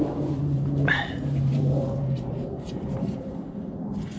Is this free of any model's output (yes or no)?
no